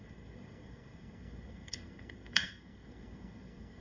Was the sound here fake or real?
fake